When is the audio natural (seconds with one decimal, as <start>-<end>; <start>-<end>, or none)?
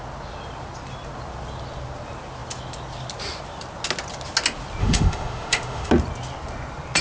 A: 0.0-4.8; 5.9-7.0